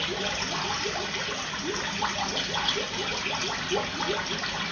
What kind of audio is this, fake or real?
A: real